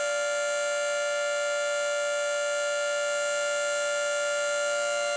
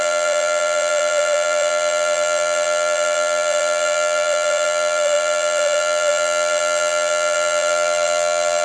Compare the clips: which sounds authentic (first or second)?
first